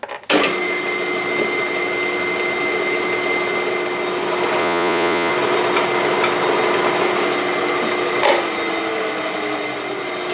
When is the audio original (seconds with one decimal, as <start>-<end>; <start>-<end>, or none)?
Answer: 0.0-4.6; 5.3-10.3